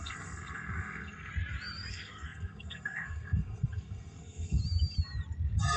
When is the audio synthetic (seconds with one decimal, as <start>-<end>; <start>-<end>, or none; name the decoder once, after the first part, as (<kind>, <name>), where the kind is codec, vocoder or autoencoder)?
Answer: 0.0-1.3 (codec, SNAC); 1.9-4.6